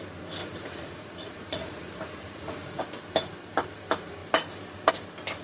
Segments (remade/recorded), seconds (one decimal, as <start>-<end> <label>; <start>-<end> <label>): 0.0-0.4 recorded; 0.4-2.8 remade; 2.8-5.4 recorded